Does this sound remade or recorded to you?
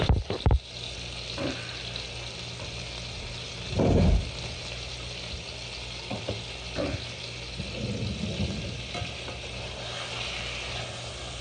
recorded